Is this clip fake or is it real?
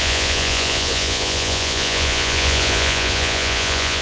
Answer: fake